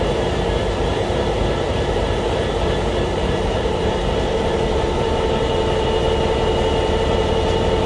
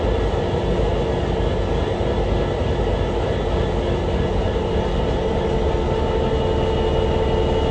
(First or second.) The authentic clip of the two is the second